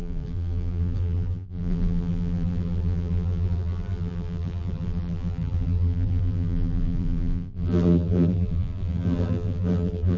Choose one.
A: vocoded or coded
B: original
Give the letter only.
A